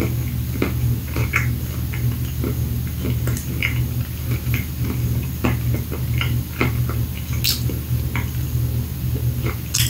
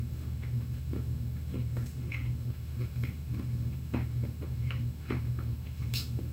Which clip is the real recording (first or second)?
first